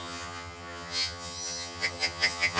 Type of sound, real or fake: fake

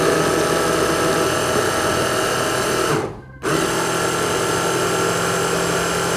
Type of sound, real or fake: real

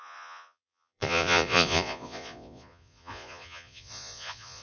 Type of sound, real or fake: fake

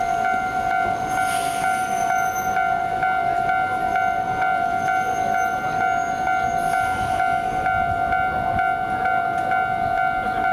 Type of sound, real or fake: real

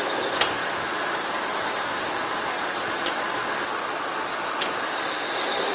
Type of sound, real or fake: real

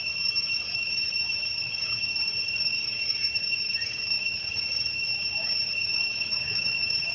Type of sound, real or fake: fake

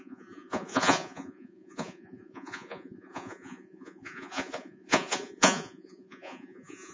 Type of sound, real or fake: fake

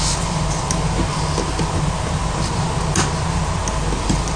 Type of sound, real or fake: real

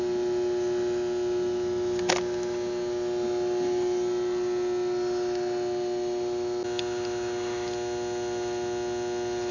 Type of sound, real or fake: real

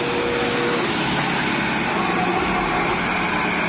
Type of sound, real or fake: real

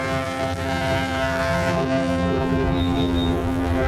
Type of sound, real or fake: fake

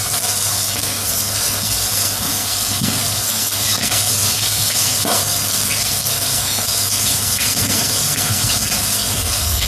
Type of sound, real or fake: fake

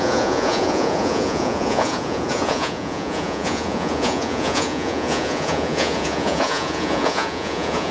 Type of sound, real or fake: fake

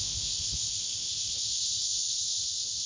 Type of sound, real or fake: fake